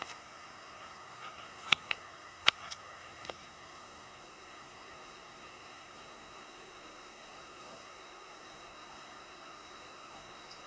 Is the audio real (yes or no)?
no